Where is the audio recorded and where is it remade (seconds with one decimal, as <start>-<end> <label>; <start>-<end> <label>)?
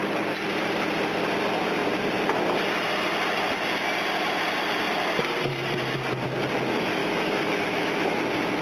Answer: 0.0-7.0 recorded; 7.0-8.2 remade; 8.2-8.6 recorded